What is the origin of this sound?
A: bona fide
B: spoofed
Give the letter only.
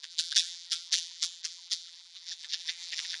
B